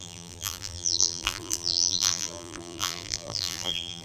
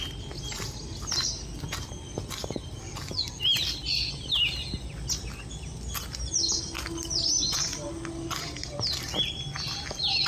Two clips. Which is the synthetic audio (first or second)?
first